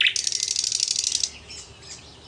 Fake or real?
real